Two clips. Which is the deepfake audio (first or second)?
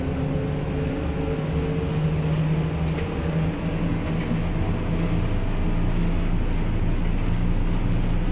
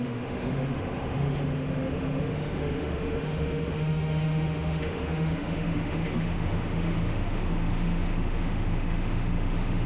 second